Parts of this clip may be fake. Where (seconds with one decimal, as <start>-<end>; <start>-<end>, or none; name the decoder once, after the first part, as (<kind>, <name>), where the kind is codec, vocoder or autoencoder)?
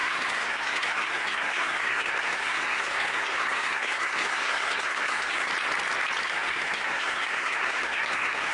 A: 0.0-5.5 (codec, SNAC); 6.2-8.5